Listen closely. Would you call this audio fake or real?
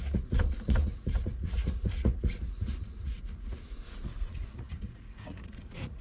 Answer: fake